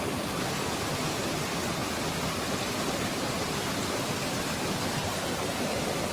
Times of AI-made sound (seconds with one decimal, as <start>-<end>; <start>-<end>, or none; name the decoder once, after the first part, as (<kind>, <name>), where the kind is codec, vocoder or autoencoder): none